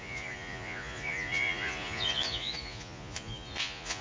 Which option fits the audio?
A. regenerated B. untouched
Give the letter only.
A